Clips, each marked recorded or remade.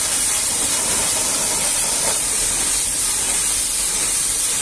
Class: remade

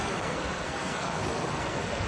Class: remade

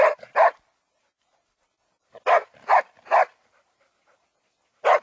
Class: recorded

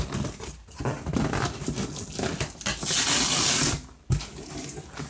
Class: recorded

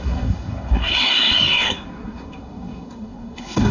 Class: remade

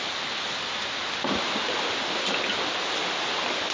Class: recorded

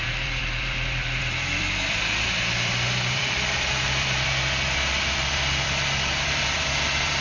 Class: remade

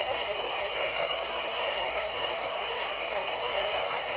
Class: remade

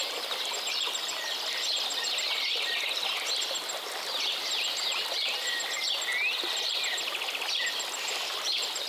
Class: recorded